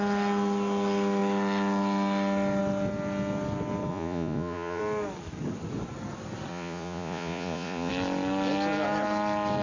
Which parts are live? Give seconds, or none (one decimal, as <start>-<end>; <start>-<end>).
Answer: 0.0-3.9; 4.8-6.5; 7.9-9.6